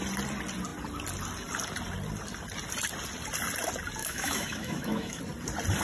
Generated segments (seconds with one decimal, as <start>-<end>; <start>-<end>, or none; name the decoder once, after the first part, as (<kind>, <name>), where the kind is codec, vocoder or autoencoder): 4.0-5.2 (autoencoder, DAC-VAE)